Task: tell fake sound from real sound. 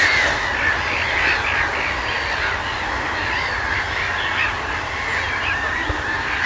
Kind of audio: real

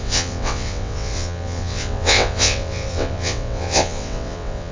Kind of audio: fake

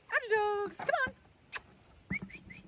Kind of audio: real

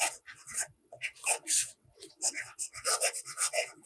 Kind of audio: fake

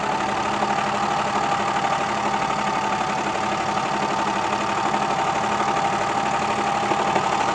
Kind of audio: real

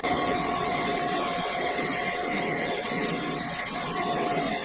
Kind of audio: fake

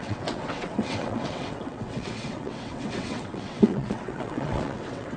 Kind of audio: fake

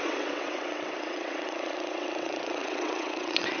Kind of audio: fake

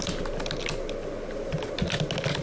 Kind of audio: real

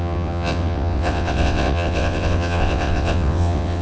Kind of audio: fake